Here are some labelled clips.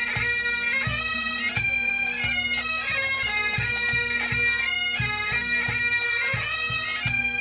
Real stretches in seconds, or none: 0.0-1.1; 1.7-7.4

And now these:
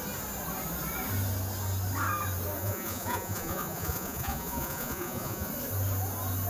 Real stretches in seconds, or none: 0.0-2.6; 5.5-6.5

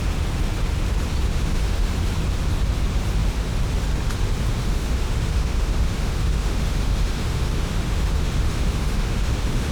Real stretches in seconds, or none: 0.0-1.3; 1.9-4.5

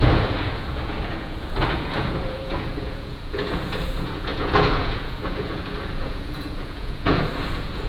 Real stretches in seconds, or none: none

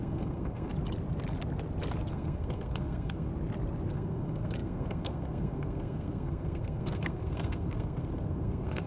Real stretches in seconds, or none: 0.7-2.1; 3.3-3.9

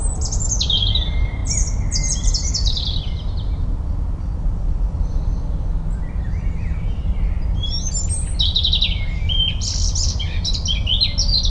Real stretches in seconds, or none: 0.0-11.5